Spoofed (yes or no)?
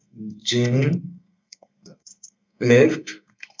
yes